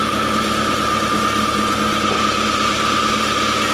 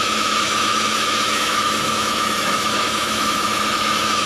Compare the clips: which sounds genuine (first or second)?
first